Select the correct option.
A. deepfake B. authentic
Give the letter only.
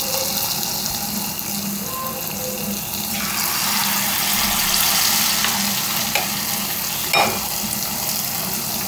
B